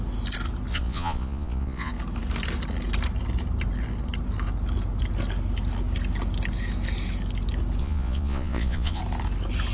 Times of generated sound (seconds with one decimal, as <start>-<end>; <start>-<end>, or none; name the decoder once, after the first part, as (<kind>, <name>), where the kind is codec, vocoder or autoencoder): 0.7-1.9 (vocoder, Vocos); 7.8-9.0